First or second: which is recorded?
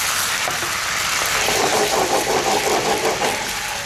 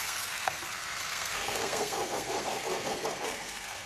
first